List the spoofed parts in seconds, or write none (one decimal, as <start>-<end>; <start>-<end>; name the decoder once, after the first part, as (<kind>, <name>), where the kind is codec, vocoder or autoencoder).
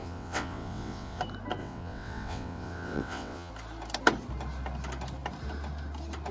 0.0-1.2 (vocoder, WaveNeXt); 1.6-3.5